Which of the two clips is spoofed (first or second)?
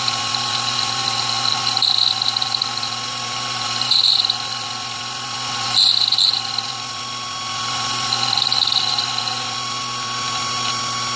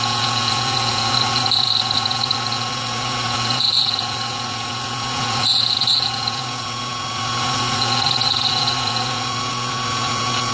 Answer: second